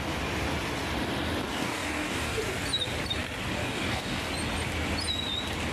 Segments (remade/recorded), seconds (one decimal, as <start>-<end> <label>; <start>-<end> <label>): 0.0-1.5 recorded; 1.5-2.4 remade; 2.4-3.6 recorded; 3.6-4.3 remade; 4.3-5.7 recorded

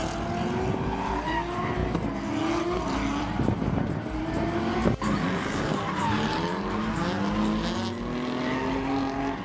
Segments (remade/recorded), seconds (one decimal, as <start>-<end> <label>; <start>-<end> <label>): 0.0-9.4 recorded

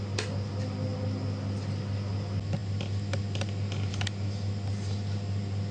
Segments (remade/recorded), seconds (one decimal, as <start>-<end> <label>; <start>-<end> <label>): 0.0-5.7 recorded

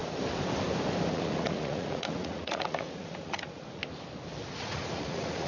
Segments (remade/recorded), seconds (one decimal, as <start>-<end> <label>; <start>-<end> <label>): 0.0-1.1 recorded; 1.1-3.8 remade; 3.8-4.5 recorded; 4.5-5.5 remade

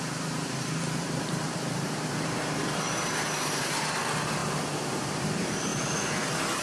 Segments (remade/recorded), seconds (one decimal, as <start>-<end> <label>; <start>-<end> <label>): 0.0-5.7 remade; 5.7-6.6 recorded

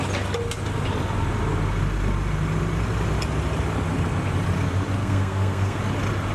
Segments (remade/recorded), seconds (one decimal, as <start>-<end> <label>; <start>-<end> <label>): 0.0-5.0 recorded; 5.0-5.8 remade; 5.8-6.3 recorded